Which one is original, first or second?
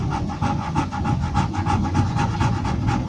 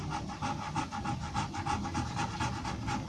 second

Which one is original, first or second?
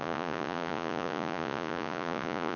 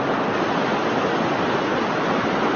second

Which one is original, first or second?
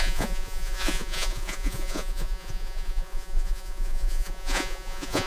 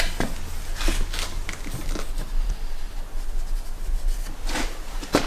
second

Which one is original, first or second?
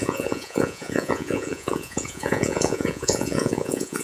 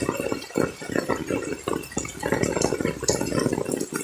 second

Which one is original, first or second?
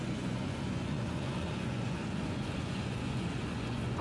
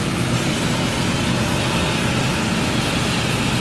second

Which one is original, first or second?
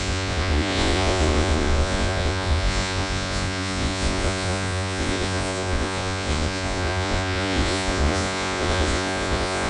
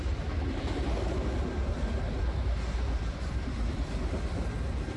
second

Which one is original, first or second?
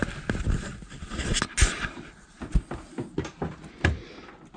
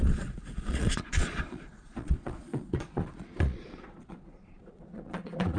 first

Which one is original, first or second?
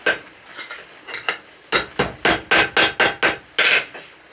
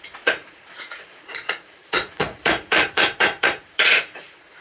first